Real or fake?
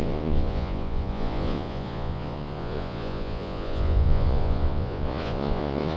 fake